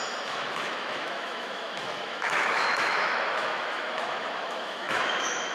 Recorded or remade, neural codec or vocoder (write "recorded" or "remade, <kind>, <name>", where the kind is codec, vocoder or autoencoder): remade, autoencoder, DAC-VAE